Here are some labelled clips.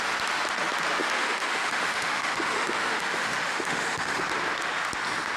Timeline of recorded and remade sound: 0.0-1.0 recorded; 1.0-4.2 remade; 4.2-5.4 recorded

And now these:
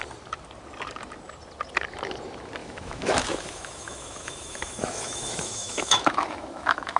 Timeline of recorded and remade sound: 0.0-2.6 recorded; 2.6-7.0 remade

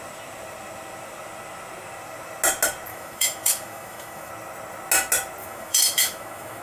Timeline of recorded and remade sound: 0.0-2.9 recorded; 2.9-4.3 remade; 4.3-5.4 recorded; 5.4-6.6 remade

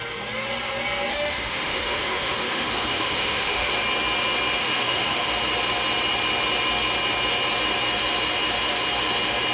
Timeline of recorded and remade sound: 0.0-1.1 recorded; 1.1-3.7 remade; 3.7-4.6 recorded; 4.6-5.3 remade; 5.3-9.5 recorded

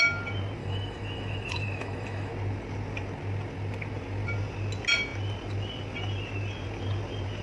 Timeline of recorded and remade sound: 0.0-0.6 recorded; 0.6-2.3 remade; 2.3-7.4 recorded